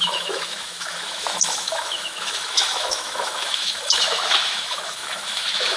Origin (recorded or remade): remade